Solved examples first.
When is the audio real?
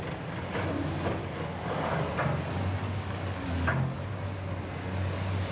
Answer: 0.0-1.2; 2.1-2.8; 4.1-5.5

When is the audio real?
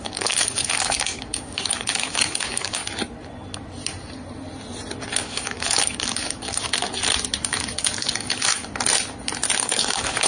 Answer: 2.8-5.2; 6.8-7.5; 8.6-9.6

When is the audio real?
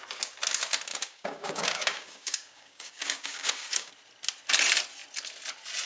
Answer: 0.0-0.9; 3.9-5.9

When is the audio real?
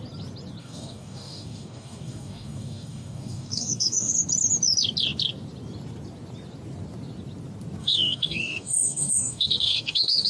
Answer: 0.0-0.6; 4.1-7.8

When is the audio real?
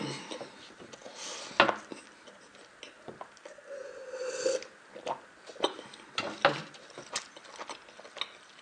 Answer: 0.0-8.6